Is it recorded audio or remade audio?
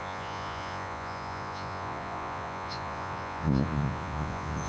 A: remade